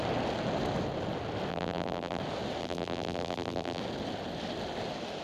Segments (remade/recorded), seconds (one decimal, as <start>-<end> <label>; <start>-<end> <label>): 0.0-1.5 recorded; 1.5-2.2 remade; 2.2-2.6 recorded; 2.6-3.8 remade; 3.8-5.2 recorded